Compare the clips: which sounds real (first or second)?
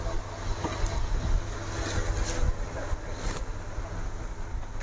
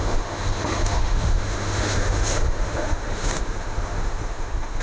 first